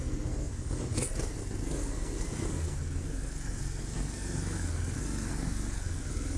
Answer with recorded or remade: remade